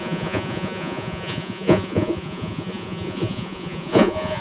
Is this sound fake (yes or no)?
yes